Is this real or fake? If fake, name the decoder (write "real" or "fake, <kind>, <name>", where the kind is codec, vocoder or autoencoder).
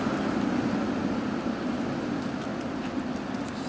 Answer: real